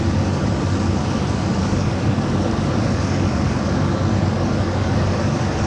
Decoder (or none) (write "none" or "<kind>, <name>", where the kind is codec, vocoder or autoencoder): codec, DAC